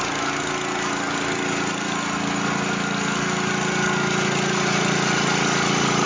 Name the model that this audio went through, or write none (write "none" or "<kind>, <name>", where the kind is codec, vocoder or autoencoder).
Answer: none